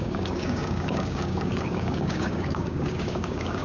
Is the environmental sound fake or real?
fake